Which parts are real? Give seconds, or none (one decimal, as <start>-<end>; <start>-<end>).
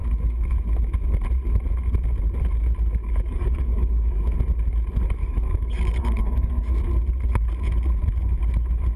0.0-3.0; 4.2-5.2; 6.5-9.0